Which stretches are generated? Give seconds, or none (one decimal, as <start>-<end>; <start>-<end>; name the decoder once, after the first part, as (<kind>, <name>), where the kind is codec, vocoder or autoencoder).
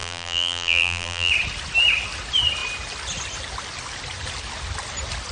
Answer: 0.0-1.3 (vocoder, BigVGAN v2)